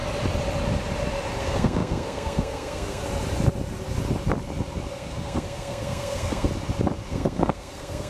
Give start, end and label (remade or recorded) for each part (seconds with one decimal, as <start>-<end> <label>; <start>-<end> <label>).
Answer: 0.0-1.4 recorded; 1.4-3.0 remade; 3.0-4.9 recorded; 4.9-6.5 remade; 6.5-7.1 recorded; 7.1-8.1 remade